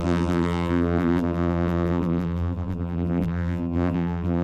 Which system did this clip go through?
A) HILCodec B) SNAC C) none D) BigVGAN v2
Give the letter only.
D